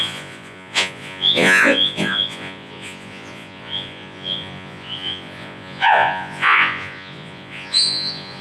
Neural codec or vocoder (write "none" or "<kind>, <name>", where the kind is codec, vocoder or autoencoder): vocoder, Vocos